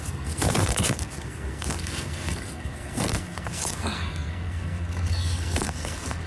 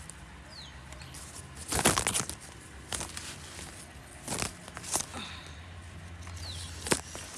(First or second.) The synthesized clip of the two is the first